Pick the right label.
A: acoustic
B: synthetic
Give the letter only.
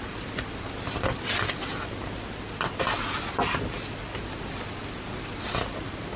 A